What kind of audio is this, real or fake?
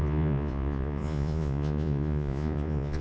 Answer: fake